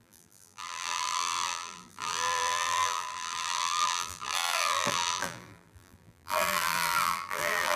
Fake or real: fake